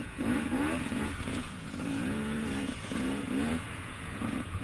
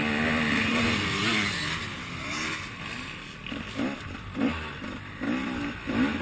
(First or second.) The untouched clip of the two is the second